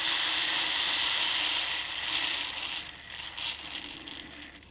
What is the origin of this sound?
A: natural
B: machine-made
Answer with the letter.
A